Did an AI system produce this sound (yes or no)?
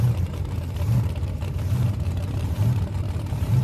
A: yes